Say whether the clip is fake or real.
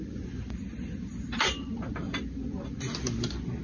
real